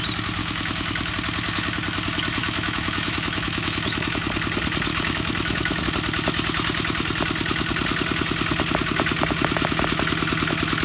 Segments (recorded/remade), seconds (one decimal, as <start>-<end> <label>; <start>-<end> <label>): 0.0-0.4 recorded; 0.4-1.1 remade; 1.1-2.4 recorded; 2.4-4.2 remade; 4.2-4.9 recorded; 4.9-5.8 remade; 5.8-10.8 recorded